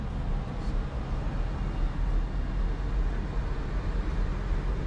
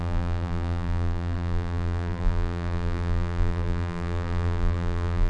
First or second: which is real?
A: first